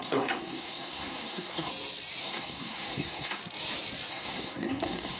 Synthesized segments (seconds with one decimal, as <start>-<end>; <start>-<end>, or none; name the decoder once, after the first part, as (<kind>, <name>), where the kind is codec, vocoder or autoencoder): 0.0-1.7 (codec, SNAC); 2.2-3.4; 4.1-5.2